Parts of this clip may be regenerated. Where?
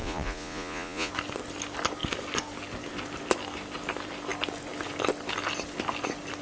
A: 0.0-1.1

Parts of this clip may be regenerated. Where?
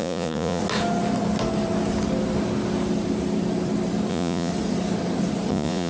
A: 0.0-0.6; 4.1-4.5; 5.5-5.9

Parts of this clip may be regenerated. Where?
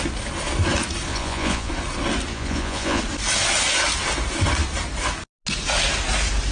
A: 1.1-1.7; 2.3-3.0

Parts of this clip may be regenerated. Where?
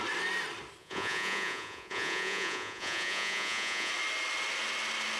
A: 0.8-3.9